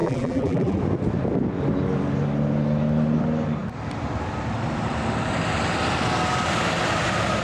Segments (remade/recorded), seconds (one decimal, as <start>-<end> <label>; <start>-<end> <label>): 0.0-0.8 remade; 0.8-7.4 recorded